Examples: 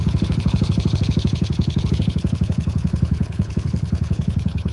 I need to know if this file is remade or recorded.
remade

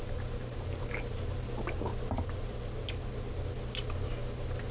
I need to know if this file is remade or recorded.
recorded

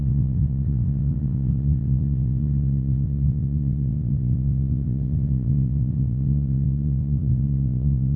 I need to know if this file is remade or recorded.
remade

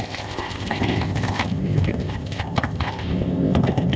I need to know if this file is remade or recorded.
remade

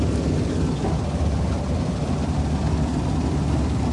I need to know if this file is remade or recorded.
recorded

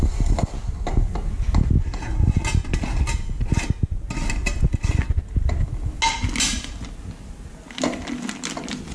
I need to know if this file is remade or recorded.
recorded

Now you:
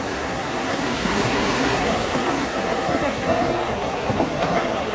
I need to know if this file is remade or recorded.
remade